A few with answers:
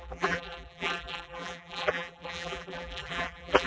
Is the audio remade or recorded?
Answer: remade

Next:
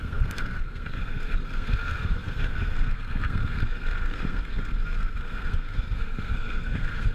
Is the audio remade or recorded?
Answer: remade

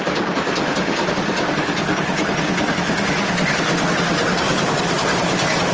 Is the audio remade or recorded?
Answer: recorded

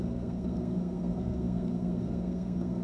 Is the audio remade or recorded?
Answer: remade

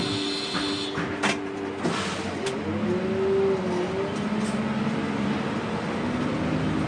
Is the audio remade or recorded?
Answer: recorded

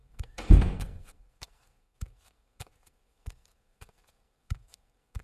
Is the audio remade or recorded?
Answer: remade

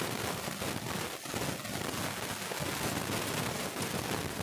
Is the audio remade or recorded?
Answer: recorded